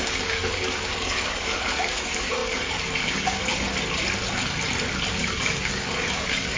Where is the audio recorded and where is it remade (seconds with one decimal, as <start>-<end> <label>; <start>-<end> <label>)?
0.0-3.5 remade; 3.5-5.1 recorded; 5.1-6.6 remade